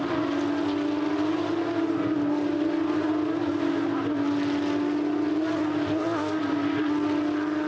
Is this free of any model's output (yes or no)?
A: yes